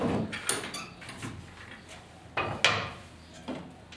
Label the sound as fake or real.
real